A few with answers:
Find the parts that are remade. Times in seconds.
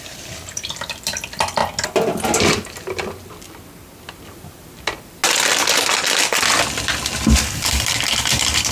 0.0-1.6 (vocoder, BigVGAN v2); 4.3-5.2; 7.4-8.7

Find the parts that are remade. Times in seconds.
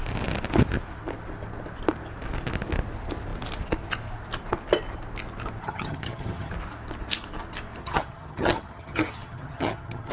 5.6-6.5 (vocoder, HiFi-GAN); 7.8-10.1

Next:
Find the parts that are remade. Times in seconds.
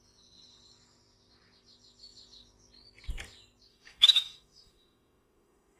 3.7-5.8 (autoencoder, DAC-VAE)